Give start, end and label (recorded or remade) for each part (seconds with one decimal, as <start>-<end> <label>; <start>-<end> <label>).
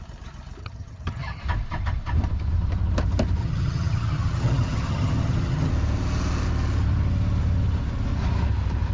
0.0-0.6 recorded; 0.6-1.4 remade; 1.4-3.4 recorded; 3.4-5.7 remade; 5.7-8.9 recorded